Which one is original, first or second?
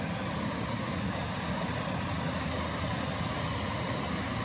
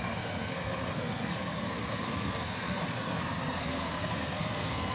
first